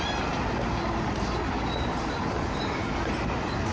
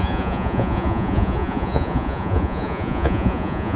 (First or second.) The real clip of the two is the first